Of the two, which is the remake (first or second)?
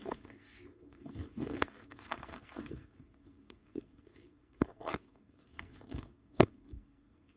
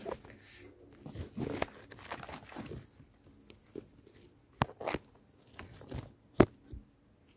first